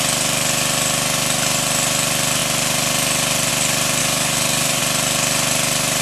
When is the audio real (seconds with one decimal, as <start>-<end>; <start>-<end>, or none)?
0.0-4.0; 4.8-6.0